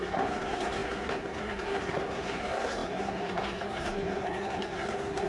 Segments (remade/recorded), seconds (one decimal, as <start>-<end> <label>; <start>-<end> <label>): 0.0-5.3 remade